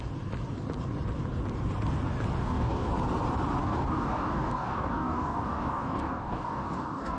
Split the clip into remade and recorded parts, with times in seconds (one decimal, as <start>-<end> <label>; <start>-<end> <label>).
0.0-2.4 recorded; 2.4-2.9 remade; 2.9-3.6 recorded; 3.6-7.2 remade